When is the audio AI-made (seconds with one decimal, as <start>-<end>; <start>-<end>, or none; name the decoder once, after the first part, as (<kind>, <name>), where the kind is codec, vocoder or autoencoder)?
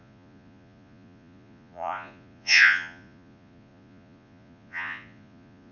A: 0.0-5.7 (vocoder, Vocos)